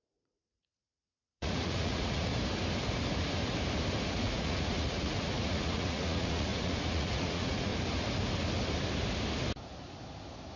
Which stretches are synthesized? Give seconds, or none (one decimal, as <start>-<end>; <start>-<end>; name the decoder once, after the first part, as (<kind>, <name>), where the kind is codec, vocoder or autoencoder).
0.0-2.3 (vocoder, Vocos); 4.1-7.7